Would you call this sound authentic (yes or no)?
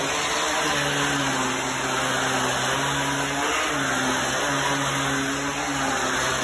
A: yes